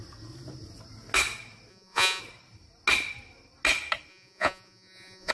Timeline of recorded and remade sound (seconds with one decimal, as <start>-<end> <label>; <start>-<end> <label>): 0.0-1.7 recorded; 1.7-2.2 remade; 2.2-4.1 recorded; 4.1-5.3 remade